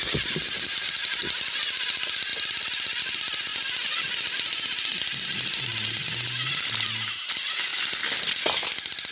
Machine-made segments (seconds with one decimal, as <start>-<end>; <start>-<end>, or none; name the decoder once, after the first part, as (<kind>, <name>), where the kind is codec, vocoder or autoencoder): none